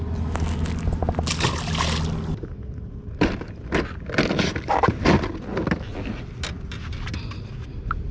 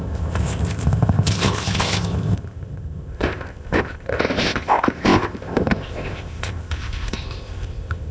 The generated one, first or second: second